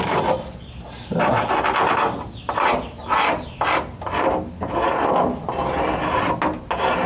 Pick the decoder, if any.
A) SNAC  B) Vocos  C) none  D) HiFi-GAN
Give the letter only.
C